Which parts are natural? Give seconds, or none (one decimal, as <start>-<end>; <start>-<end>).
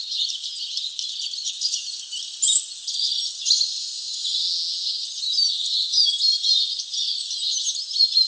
0.0-8.3